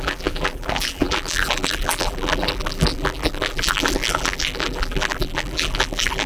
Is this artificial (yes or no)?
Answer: yes